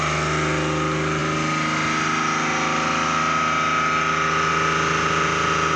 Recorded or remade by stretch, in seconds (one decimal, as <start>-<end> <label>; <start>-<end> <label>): 0.0-5.8 recorded